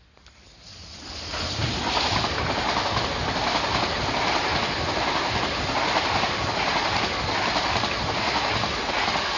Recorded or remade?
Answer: recorded